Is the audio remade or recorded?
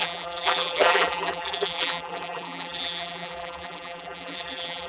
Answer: remade